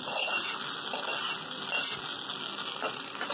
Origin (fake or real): real